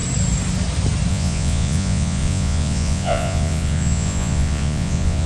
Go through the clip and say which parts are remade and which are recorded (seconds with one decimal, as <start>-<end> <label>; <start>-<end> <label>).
0.0-1.1 recorded; 1.1-5.3 remade